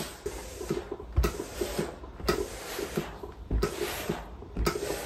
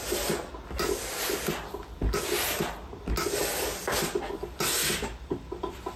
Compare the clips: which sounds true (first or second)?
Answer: second